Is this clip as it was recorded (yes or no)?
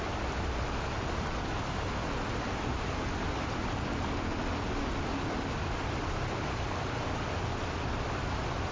yes